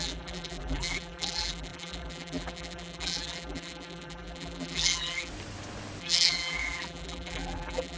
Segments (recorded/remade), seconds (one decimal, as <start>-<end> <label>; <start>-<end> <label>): 0.0-5.3 remade; 5.3-6.0 recorded; 6.0-8.0 remade

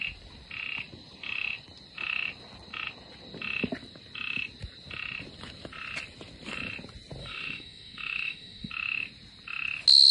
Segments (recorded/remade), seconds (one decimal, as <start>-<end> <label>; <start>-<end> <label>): 0.0-7.2 recorded; 7.2-8.7 remade; 8.7-10.1 recorded

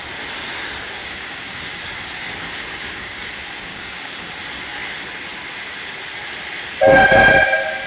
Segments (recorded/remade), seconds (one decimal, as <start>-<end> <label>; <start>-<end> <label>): 0.0-1.0 recorded; 1.0-1.8 remade; 1.8-2.2 recorded; 2.2-3.3 remade; 3.3-3.7 recorded; 3.7-4.3 remade; 4.3-7.9 recorded